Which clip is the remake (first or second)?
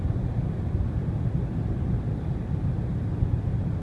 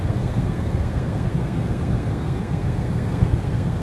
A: second